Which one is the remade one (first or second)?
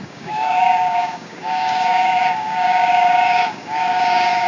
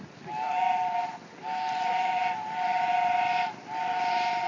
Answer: first